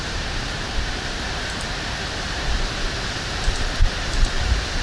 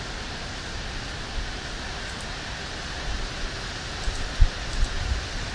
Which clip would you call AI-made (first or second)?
first